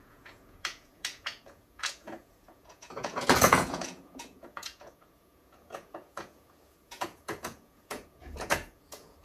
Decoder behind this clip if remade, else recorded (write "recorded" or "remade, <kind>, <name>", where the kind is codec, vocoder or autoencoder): remade, vocoder, Vocos